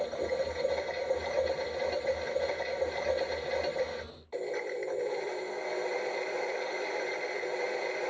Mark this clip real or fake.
real